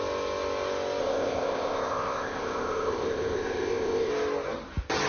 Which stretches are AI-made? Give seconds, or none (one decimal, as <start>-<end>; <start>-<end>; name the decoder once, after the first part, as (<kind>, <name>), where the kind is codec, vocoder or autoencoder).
1.0-4.1 (codec, ZipCodec)